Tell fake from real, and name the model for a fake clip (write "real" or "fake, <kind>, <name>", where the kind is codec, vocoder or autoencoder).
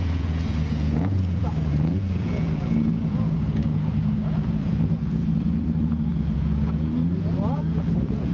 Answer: fake, vocoder, Vocos